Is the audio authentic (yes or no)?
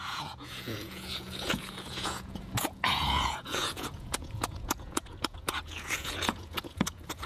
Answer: no